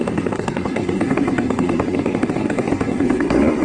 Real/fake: fake